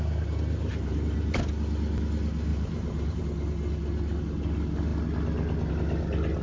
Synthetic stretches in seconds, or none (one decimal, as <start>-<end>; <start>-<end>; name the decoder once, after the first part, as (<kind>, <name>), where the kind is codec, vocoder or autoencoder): 0.7-1.5 (vocoder, BigVGAN v2); 2.5-3.2